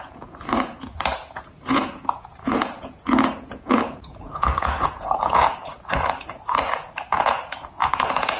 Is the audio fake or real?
fake